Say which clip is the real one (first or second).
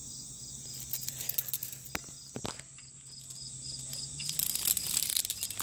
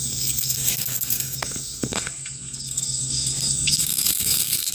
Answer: first